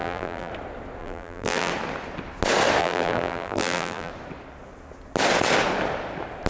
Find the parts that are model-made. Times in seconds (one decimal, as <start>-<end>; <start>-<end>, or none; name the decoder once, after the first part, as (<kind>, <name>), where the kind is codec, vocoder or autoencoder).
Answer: 0.0-0.5 (vocoder, BigVGAN v2); 1.0-1.7; 2.8-4.1